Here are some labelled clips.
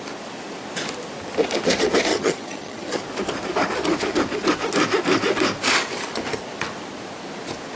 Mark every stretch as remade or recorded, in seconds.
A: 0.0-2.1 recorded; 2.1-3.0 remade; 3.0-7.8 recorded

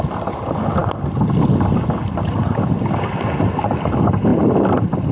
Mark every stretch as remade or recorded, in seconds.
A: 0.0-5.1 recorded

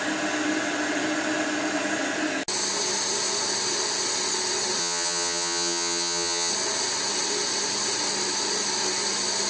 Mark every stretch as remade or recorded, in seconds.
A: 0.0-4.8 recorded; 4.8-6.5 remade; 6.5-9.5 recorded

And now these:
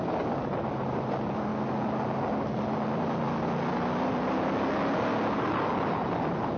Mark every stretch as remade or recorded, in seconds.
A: 0.0-6.6 recorded

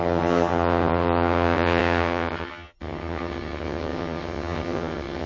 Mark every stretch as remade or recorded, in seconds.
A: 0.0-5.3 remade